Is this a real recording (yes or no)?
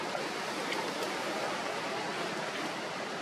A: yes